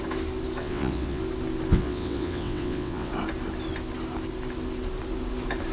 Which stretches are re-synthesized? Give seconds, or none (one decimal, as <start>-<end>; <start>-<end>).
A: 0.6-1.2; 1.7-3.1